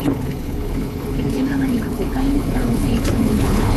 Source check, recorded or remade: remade